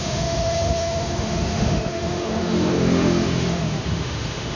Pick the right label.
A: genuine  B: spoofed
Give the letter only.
B